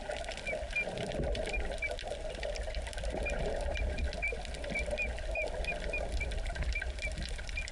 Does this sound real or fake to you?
real